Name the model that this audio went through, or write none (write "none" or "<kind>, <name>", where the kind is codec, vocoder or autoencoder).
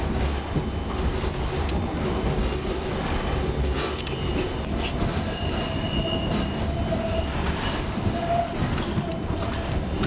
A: none